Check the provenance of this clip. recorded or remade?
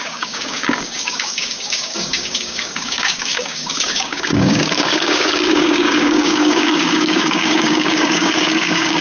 remade